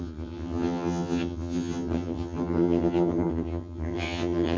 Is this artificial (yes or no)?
yes